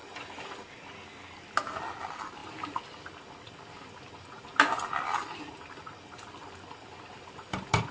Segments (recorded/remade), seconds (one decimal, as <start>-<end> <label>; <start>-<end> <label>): 0.0-7.9 recorded